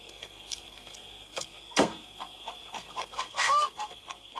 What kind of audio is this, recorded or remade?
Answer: remade